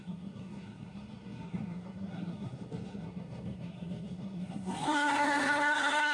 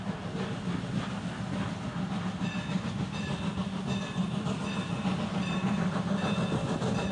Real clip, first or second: second